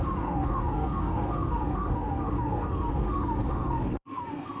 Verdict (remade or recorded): remade